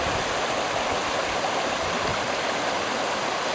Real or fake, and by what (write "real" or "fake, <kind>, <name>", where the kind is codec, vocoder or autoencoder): real